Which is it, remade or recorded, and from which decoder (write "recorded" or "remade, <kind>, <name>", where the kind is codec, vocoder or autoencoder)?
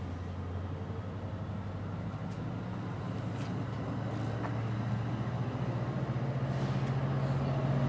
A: recorded